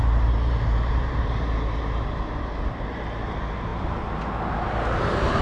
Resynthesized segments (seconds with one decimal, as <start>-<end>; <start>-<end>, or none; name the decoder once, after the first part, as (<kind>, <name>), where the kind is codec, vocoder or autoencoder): 0.0-3.2 (vocoder, BigVGAN v2)